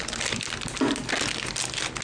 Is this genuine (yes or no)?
yes